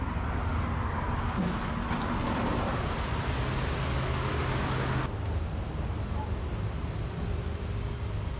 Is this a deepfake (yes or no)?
no